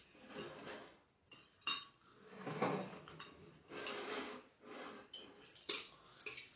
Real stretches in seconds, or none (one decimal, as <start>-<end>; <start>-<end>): 0.0-6.6